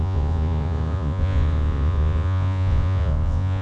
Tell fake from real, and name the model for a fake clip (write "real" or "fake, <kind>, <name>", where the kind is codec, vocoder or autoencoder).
fake, vocoder, Vocos